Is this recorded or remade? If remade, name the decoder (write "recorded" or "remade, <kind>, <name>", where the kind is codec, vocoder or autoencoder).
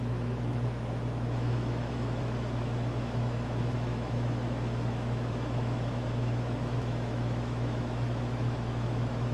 remade, autoencoder, DAC-VAE